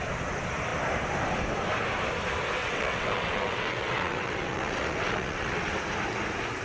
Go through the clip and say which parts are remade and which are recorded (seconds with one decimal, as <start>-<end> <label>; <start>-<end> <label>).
0.0-2.6 recorded; 2.6-5.7 remade; 5.7-6.6 recorded